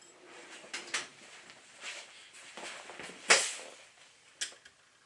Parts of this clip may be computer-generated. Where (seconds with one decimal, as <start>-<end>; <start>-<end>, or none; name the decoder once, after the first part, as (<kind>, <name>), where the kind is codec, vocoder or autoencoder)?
none